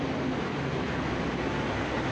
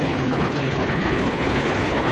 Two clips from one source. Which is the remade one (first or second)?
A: second